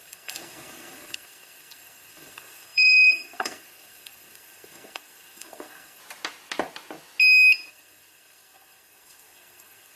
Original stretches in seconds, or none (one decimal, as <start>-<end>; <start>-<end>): 6.0-7.7